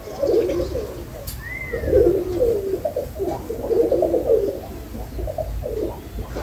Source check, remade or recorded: recorded